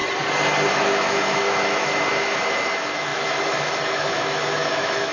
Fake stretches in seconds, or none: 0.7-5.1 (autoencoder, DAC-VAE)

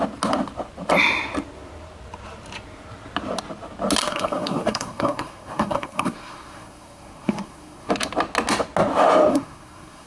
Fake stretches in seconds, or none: 4.0-7.9 (codec, SNAC); 9.3-10.1